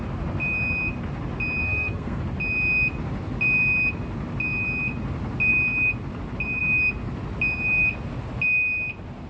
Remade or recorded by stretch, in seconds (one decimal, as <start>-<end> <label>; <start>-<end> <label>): 0.0-1.6 recorded; 1.6-2.2 remade; 2.2-9.3 recorded